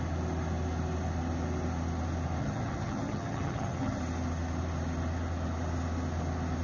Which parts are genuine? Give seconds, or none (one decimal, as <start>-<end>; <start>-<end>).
0.0-2.4; 4.0-6.6